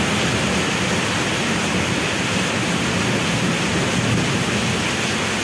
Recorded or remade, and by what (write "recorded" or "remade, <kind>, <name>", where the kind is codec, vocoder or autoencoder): recorded